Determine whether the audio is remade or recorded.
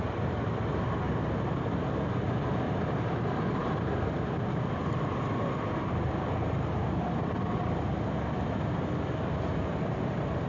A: recorded